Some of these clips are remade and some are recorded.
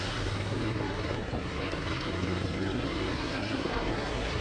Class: remade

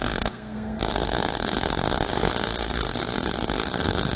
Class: remade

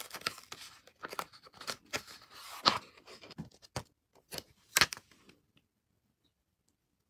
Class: recorded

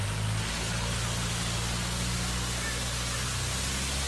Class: recorded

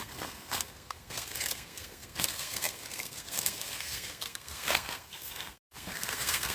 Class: remade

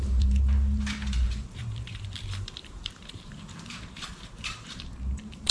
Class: remade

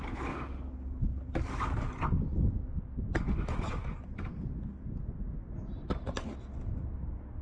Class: recorded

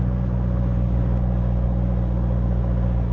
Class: recorded